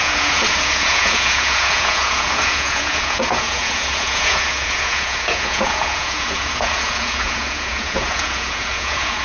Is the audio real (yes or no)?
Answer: no